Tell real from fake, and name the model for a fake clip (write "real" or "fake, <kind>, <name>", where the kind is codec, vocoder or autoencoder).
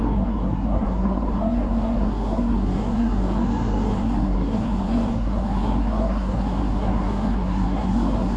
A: fake, codec, SNAC